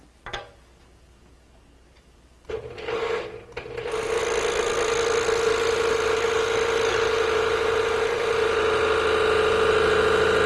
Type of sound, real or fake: real